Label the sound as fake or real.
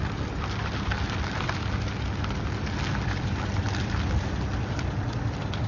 real